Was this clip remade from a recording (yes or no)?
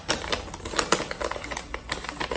no